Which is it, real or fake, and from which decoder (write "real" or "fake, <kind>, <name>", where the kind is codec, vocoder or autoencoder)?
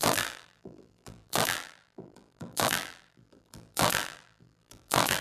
fake, vocoder, BigVGAN v2